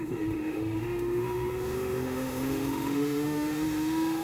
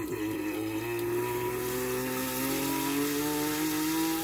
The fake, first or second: first